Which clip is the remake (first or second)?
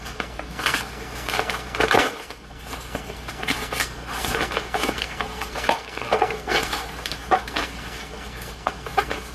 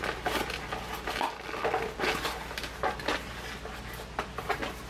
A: first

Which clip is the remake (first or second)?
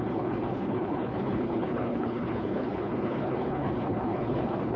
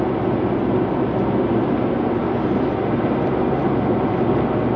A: first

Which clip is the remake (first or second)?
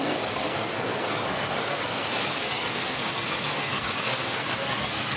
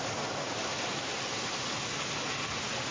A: first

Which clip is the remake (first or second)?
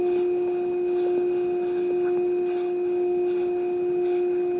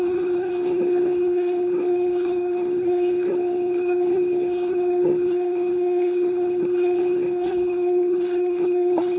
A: second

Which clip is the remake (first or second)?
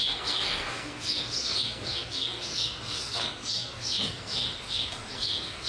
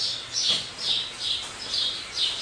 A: first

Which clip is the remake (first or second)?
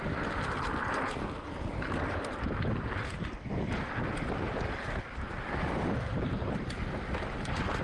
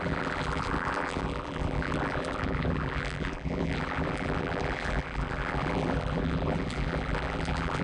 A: second